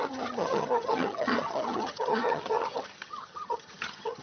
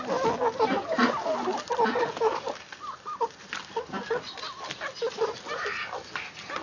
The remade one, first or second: first